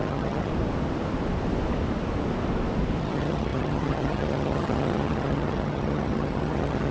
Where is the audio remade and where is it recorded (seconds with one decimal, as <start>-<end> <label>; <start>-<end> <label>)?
0.0-0.5 remade; 0.5-3.0 recorded; 3.0-6.9 remade